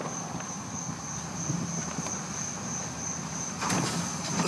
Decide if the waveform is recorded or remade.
recorded